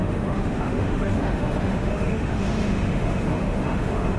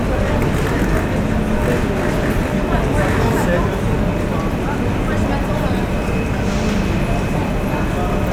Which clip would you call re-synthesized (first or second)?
first